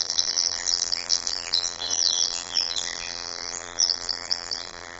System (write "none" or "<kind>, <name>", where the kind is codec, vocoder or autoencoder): vocoder, BigVGAN v2